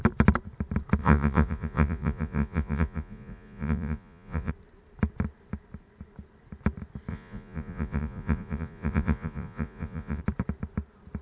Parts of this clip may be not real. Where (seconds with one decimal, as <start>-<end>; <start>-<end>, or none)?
1.0-4.5; 7.1-10.2